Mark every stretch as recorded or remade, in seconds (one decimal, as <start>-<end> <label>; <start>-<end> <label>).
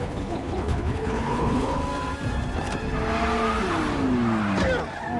0.0-1.8 remade; 1.8-5.2 recorded